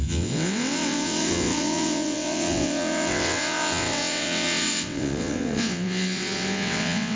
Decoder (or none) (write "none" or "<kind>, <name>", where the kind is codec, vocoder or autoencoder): vocoder, WaveNeXt